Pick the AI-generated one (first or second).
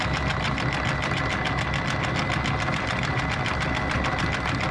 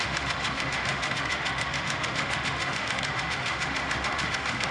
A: second